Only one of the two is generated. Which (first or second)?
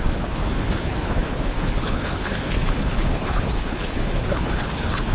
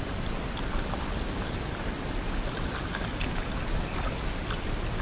first